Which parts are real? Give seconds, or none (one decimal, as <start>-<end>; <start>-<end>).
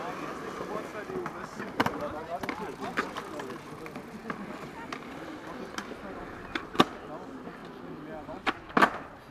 0.0-9.3